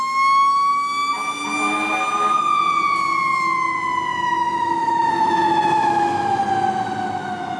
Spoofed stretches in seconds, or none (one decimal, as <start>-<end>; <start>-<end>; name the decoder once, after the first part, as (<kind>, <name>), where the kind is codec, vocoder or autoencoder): 4.1-6.4 (autoencoder, DAC-VAE)